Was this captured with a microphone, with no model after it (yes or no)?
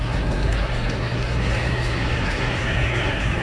no